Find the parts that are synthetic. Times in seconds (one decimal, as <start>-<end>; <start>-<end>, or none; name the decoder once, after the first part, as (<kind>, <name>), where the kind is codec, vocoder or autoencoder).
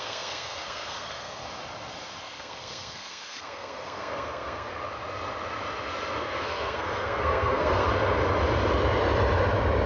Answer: 0.0-1.4 (codec, SNAC); 2.2-4.7; 6.2-7.9